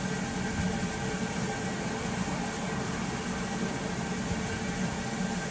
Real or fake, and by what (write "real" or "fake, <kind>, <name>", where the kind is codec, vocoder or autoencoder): real